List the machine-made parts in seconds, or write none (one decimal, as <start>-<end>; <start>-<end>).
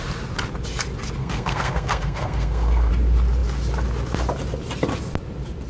1.2-2.9